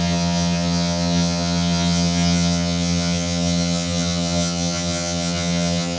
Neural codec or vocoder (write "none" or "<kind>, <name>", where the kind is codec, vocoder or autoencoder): vocoder, HiFi-GAN